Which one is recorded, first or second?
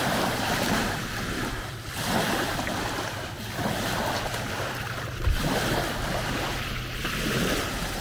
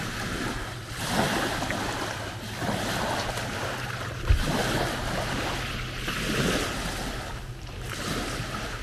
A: second